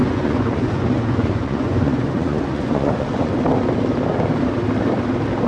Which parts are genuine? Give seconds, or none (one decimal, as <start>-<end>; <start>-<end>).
3.3-5.5